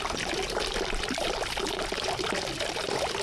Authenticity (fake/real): real